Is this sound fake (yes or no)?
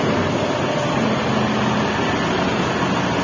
no